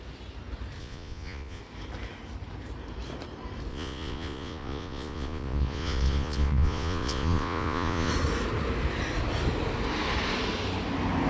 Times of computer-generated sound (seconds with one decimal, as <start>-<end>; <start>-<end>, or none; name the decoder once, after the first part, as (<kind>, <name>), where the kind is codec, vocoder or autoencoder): 0.8-1.6 (vocoder, Vocos); 3.7-8.1